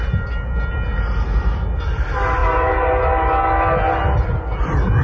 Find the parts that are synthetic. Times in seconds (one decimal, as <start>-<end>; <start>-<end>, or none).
none